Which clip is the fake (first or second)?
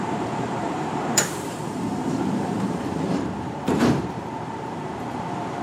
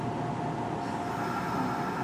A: first